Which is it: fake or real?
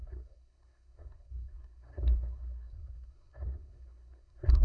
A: fake